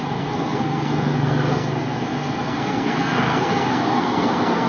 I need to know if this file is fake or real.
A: fake